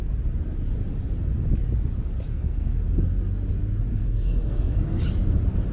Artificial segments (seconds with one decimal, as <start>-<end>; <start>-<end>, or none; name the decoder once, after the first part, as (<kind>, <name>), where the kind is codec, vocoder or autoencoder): 2.3-2.8 (codec, SNAC); 3.9-5.0